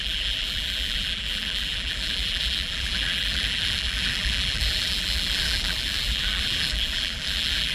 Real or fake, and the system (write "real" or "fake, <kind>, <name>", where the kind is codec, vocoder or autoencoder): fake, vocoder, BigVGAN v2